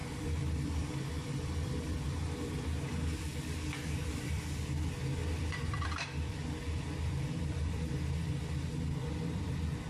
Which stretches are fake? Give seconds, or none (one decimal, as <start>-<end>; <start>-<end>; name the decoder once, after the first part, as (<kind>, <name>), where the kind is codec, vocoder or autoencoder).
0.0-4.7 (vocoder, BigVGAN v2); 5.2-9.4